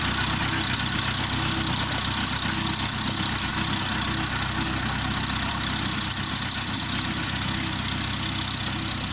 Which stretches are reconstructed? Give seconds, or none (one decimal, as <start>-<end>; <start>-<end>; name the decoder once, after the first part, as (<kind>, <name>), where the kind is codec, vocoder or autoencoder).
none